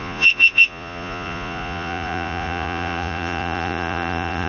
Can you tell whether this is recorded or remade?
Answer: remade